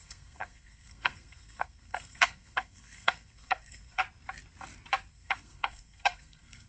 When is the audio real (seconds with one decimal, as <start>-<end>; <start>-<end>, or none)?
4.0-5.1